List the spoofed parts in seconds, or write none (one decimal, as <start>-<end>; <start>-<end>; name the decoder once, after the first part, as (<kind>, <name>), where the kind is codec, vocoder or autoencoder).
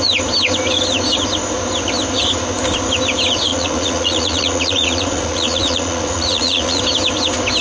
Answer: 3.5-6.8 (vocoder, Vocos)